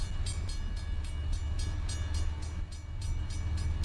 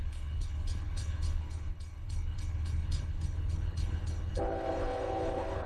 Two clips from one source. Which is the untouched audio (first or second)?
first